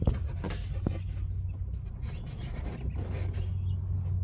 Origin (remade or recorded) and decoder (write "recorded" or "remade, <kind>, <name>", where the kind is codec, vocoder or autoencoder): recorded